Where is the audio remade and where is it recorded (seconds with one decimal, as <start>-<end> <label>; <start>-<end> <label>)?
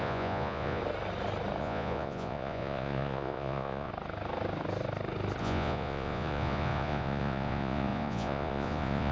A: 0.0-0.8 remade; 0.8-1.6 recorded; 1.6-3.9 remade; 3.9-5.4 recorded; 5.4-9.1 remade